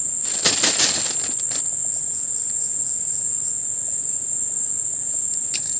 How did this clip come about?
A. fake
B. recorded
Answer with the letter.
B